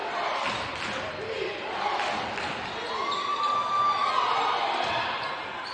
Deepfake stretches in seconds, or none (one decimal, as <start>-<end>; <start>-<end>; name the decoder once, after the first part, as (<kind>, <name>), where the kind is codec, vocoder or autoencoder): none